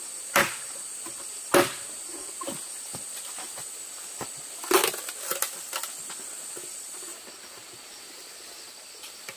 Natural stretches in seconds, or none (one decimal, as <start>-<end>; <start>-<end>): 0.0-9.4